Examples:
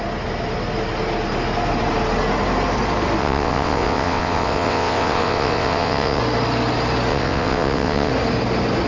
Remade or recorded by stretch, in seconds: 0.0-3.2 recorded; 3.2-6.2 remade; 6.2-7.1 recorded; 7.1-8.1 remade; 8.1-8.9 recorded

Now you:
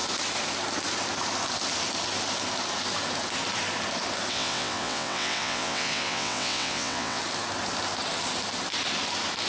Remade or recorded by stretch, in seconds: 0.0-4.3 recorded; 4.3-7.2 remade; 7.2-9.5 recorded

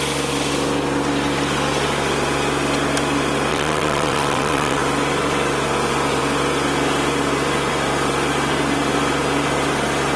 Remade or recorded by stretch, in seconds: 0.0-3.5 recorded; 3.5-4.8 remade; 4.8-10.2 recorded

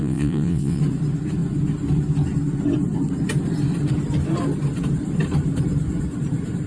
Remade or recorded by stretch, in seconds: 0.0-0.8 remade; 0.8-6.7 recorded

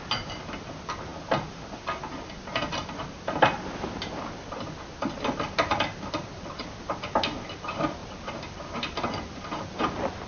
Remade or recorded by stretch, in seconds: 0.0-10.3 recorded

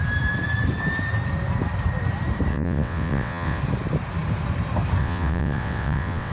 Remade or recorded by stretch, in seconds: 0.0-2.5 recorded; 2.5-3.6 remade; 3.6-5.0 recorded; 5.0-6.3 remade

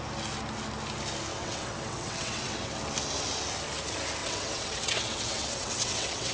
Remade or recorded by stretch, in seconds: 0.0-1.3 recorded; 1.3-2.8 remade; 2.8-4.2 recorded; 4.2-6.3 remade